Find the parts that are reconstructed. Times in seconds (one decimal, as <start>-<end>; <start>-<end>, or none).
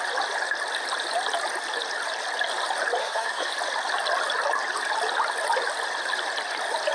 3.0-3.5